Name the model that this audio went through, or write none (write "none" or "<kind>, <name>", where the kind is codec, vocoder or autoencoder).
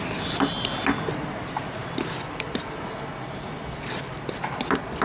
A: none